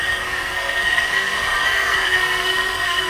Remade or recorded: remade